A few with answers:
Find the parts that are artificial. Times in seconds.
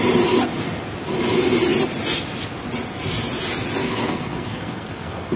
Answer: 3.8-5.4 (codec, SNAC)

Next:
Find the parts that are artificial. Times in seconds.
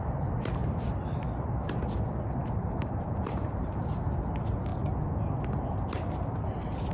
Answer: 2.4-3.9 (vocoder, BigVGAN v2)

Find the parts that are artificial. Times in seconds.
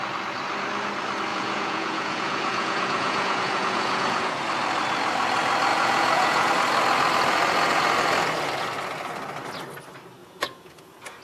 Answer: 1.3-4.4 (vocoder, Vocos); 5.7-6.5; 10.2-11.2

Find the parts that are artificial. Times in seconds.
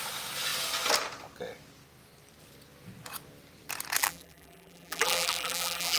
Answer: 4.0-6.0 (vocoder, BigVGAN v2)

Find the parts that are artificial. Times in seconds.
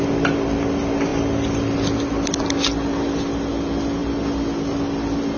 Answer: none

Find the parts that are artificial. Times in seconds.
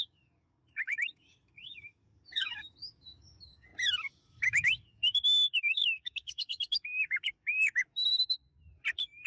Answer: 0.0-3.7 (codec, DAC); 4.2-8.4; 8.9-9.3